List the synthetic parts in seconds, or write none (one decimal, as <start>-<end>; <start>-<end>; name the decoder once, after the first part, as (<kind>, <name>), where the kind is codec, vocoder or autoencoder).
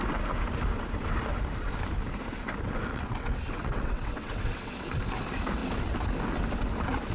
2.9-4.7 (vocoder, WaveNeXt)